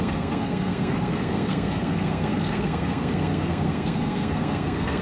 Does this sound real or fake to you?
fake